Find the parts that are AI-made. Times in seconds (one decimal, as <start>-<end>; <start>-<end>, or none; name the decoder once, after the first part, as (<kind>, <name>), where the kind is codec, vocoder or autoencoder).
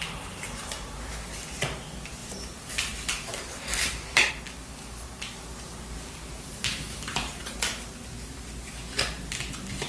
2.2-4.3 (vocoder, BigVGAN v2)